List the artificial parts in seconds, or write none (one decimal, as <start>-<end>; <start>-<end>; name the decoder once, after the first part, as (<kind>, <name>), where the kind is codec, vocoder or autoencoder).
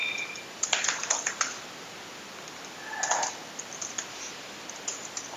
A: none